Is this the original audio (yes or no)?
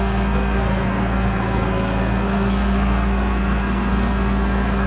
no